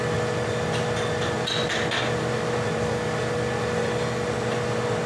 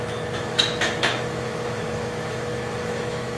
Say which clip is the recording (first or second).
first